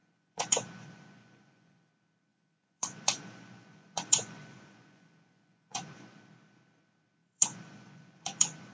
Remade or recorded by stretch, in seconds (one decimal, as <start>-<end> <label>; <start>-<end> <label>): 0.0-1.9 remade; 1.9-2.3 recorded; 2.3-6.2 remade; 6.2-7.2 recorded; 7.2-8.7 remade